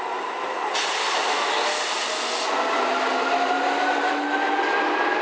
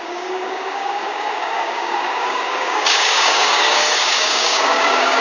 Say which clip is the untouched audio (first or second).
first